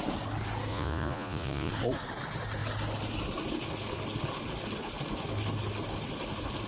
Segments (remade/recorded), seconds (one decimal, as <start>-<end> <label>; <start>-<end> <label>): 0.0-0.7 recorded; 0.7-1.7 remade; 1.7-6.7 recorded